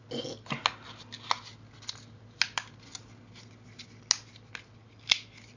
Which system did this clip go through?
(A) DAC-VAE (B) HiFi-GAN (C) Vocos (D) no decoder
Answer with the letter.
D